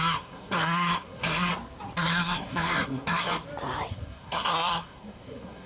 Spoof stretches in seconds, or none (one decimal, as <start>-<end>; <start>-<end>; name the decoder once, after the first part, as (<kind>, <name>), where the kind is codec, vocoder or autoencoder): 0.0-1.5 (codec, SNAC); 2.1-3.3; 3.9-5.7